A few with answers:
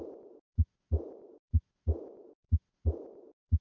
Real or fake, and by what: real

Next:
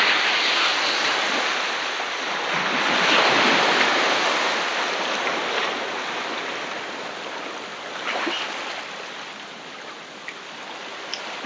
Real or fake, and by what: real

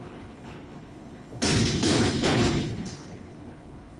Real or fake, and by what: fake, codec, HILCodec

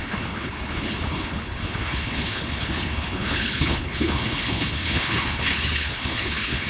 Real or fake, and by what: fake, codec, HILCodec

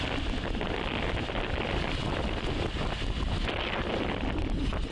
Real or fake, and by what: real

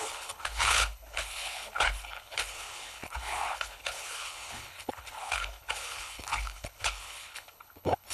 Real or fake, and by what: fake, codec, HILCodec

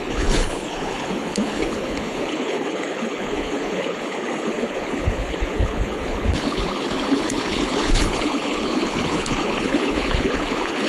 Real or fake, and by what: fake, codec, HILCodec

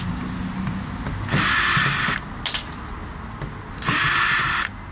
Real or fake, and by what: real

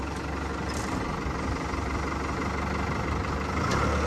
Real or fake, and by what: real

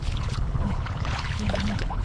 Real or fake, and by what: fake, codec, HILCodec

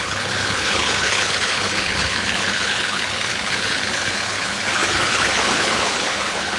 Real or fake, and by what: fake, codec, HILCodec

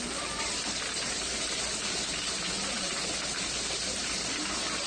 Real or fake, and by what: real